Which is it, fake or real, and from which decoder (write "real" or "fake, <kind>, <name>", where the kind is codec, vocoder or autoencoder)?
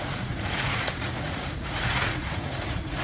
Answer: fake, vocoder, Vocos